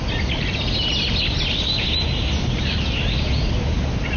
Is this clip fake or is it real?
real